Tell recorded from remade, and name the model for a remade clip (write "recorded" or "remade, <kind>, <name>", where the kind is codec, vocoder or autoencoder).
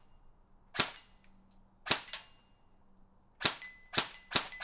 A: recorded